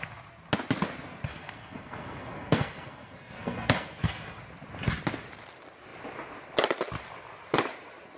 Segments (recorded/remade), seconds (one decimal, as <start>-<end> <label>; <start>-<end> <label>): 0.0-1.3 recorded; 1.3-4.4 remade; 4.4-8.2 recorded